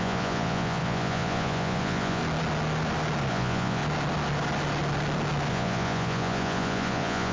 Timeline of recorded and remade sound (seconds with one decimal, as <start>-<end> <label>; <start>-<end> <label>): 0.0-2.2 remade; 2.2-3.3 recorded; 3.3-3.8 remade; 3.8-5.5 recorded; 5.5-7.3 remade